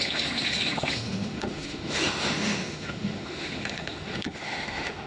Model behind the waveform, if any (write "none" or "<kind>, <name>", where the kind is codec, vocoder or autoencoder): autoencoder, DAC-VAE